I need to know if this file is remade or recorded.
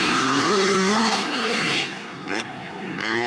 remade